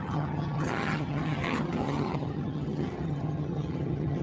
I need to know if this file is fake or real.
fake